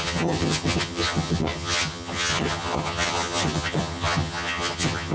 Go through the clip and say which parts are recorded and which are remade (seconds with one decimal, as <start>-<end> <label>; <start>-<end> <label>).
0.0-5.1 remade